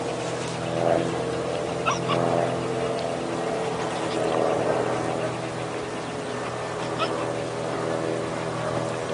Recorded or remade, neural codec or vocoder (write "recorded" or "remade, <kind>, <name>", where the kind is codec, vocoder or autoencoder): recorded